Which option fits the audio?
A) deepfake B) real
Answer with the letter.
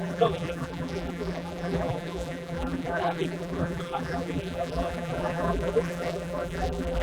A